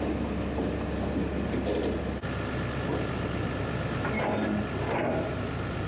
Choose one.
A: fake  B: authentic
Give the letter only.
B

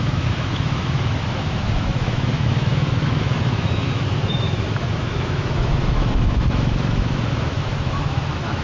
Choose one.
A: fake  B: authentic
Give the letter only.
A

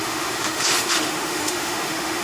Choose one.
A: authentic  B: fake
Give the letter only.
B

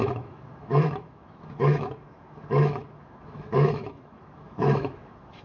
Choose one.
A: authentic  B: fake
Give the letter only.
B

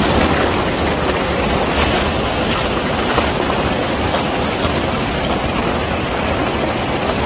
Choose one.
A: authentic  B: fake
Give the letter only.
A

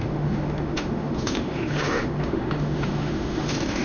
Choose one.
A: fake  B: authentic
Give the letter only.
A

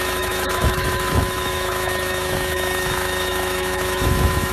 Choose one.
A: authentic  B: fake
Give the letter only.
B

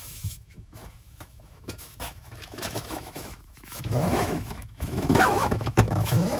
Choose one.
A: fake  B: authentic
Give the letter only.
A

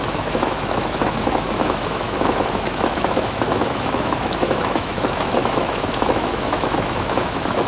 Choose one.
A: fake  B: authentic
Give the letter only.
A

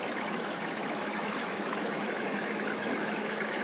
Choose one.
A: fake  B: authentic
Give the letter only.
A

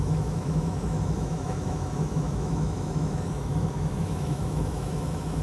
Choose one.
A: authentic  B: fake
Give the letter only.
B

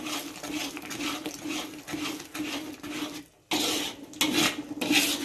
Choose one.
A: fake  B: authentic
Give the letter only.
B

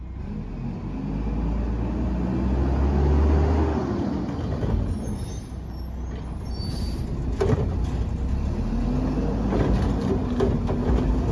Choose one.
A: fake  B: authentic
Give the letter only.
B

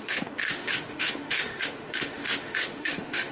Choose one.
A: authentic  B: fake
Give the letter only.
B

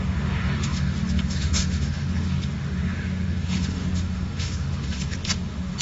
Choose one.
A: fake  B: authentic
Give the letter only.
A